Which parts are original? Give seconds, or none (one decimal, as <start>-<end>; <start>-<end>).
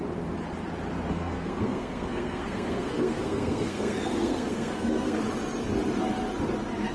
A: 0.0-1.1; 5.2-6.9